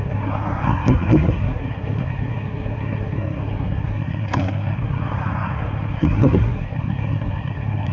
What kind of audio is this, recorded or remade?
remade